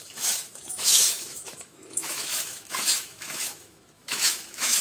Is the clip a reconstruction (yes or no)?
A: yes